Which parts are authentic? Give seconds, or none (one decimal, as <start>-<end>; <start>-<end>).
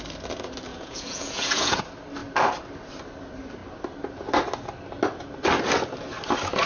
0.0-0.7; 1.8-6.7